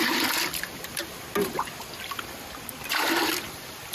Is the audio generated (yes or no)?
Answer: no